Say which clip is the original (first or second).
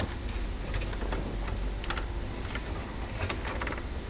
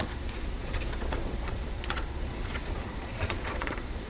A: first